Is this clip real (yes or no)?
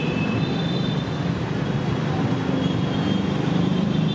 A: no